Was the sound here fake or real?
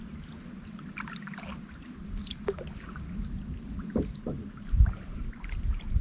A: real